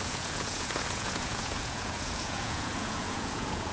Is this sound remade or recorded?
remade